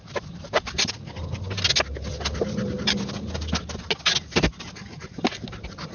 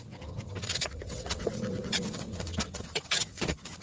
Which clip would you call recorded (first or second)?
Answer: first